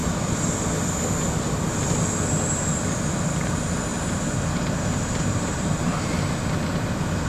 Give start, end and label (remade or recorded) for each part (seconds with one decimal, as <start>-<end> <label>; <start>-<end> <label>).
0.0-3.9 recorded; 3.9-6.2 remade; 6.2-7.3 recorded